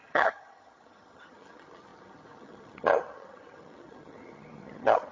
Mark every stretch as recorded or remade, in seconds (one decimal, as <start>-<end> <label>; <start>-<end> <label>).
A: 0.0-5.1 remade